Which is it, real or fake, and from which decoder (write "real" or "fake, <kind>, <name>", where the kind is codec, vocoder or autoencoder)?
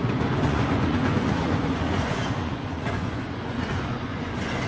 fake, vocoder, Vocos